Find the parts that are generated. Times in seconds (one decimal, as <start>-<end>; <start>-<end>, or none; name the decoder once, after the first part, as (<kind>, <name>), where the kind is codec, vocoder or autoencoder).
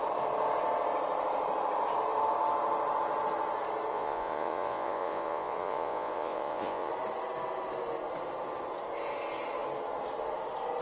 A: 3.9-6.9 (vocoder, Vocos)